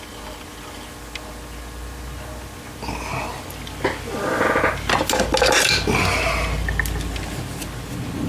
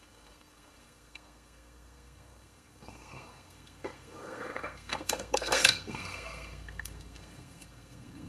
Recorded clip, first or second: first